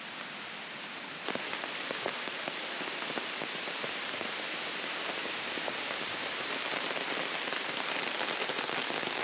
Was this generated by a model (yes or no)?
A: no